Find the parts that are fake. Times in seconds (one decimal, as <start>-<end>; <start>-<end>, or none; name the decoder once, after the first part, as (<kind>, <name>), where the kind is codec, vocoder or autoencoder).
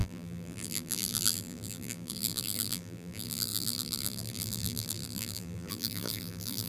0.0-6.7 (vocoder, BigVGAN v2)